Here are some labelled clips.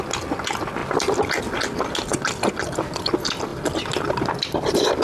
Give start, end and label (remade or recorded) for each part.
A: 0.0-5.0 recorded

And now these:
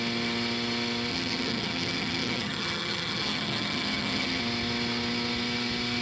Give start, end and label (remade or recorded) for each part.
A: 0.0-1.1 recorded; 1.1-4.4 remade; 4.4-6.0 recorded

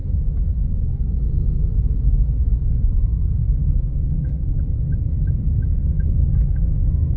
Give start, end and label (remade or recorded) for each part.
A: 0.0-2.6 recorded; 2.6-4.6 remade; 4.6-5.7 recorded; 5.7-6.6 remade; 6.6-7.2 recorded